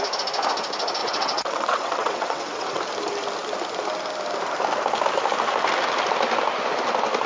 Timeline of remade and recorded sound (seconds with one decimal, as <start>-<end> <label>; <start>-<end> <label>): 0.0-1.0 recorded; 1.0-2.8 remade; 2.8-7.3 recorded